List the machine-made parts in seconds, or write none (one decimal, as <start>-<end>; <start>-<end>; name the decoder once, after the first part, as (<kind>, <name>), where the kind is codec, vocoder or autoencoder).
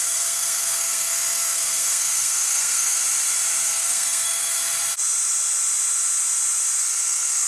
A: 0.0-3.0 (codec, SNAC); 3.6-4.6; 6.8-7.5